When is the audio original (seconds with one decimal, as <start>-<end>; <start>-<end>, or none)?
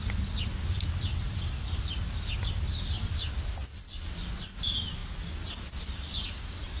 0.0-6.8